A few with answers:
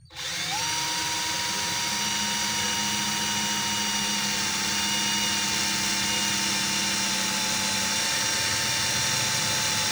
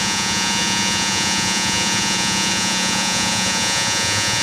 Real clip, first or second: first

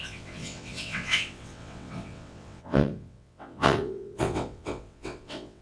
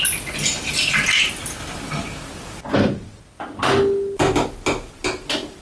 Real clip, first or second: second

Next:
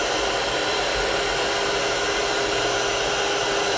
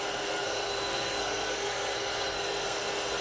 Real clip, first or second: first